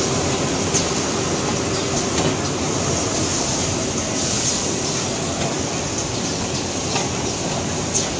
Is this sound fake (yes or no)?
no